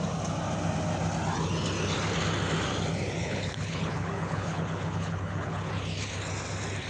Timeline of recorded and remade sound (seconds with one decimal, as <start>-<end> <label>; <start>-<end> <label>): 0.0-3.2 recorded; 3.2-5.7 remade; 5.7-6.9 recorded